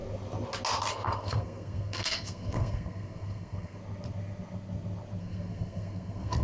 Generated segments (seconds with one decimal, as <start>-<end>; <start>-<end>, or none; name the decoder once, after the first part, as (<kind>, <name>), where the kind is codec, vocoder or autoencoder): 0.9-3.8 (codec, SNAC); 5.2-6.4